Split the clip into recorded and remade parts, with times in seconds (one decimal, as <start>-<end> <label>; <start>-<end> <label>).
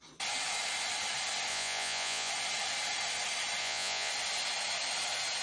0.0-1.5 recorded; 1.5-2.3 remade; 2.3-3.6 recorded; 3.6-4.1 remade; 4.1-5.4 recorded